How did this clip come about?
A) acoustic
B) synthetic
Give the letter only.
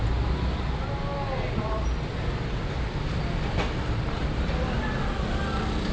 A